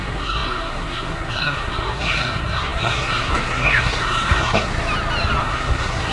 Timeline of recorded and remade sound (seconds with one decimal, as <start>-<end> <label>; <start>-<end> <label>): 0.0-4.7 remade; 4.7-5.4 recorded; 5.4-6.1 remade